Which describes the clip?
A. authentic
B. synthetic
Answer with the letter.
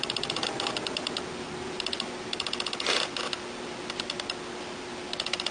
A